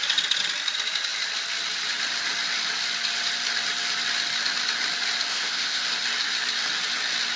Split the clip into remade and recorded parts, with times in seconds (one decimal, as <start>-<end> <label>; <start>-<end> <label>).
0.0-5.3 recorded; 5.3-5.8 remade; 5.8-7.4 recorded